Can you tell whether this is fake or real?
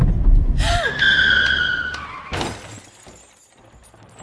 real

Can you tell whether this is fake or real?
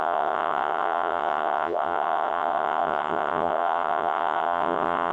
fake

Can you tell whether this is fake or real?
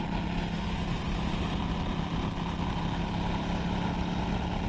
real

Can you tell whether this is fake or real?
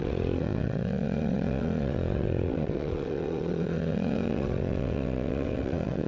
fake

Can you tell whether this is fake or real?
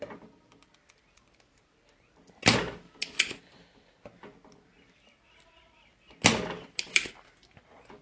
real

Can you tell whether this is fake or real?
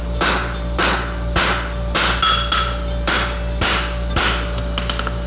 real